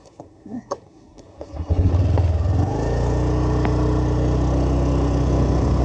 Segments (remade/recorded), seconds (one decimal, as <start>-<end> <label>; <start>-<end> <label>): 0.0-1.9 remade; 1.9-5.8 recorded